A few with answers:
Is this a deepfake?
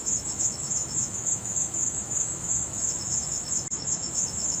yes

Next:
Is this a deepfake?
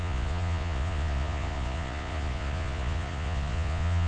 yes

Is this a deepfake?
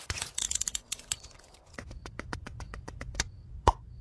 yes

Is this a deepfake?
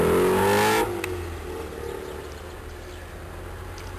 no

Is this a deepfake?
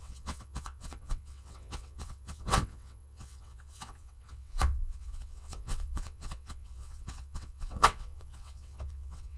yes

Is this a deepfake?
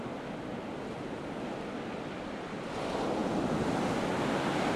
no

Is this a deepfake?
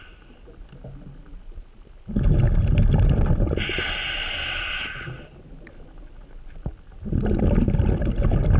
no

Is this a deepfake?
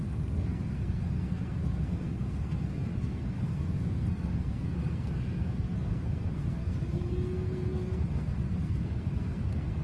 yes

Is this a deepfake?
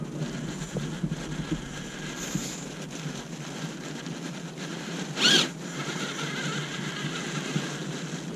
no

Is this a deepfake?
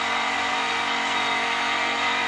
yes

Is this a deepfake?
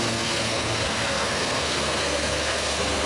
yes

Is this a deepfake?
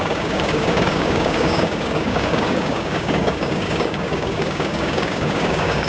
yes